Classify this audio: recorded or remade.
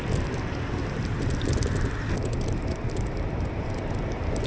recorded